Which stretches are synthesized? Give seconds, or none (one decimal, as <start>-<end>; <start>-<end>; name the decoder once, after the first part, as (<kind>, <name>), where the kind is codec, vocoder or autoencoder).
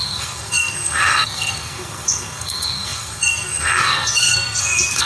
0.0-5.1 (codec, SNAC)